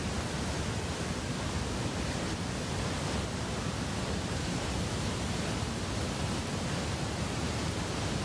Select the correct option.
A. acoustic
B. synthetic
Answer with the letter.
A